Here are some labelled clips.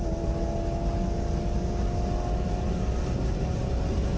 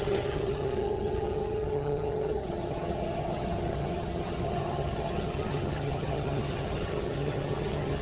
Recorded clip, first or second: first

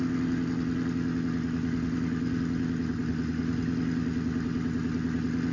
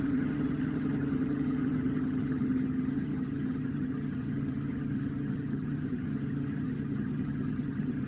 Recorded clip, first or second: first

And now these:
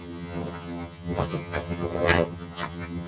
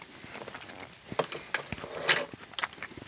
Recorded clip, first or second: second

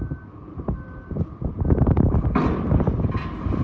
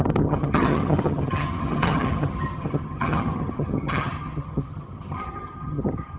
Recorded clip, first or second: first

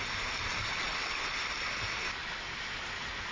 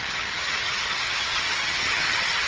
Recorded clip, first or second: first